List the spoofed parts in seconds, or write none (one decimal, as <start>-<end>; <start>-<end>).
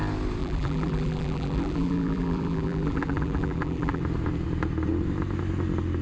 0.4-4.0